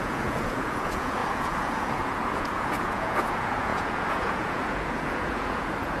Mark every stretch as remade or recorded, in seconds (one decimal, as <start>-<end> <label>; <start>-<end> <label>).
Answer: 0.0-6.0 remade